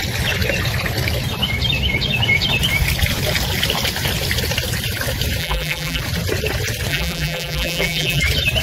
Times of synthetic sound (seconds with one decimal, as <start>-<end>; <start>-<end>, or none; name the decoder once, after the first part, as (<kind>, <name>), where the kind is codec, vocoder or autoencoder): 5.4-6.0 (vocoder, BigVGAN v2); 6.9-8.2